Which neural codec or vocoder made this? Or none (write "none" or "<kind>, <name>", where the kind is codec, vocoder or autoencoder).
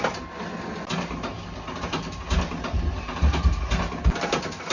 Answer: none